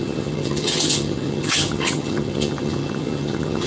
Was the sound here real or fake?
fake